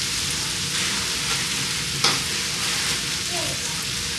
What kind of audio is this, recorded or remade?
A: recorded